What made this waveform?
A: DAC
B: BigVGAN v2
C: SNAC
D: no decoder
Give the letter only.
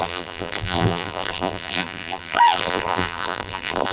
B